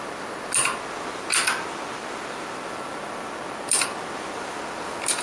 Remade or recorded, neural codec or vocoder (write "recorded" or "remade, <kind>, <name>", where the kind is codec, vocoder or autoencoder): recorded